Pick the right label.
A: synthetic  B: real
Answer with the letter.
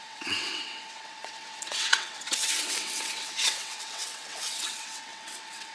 A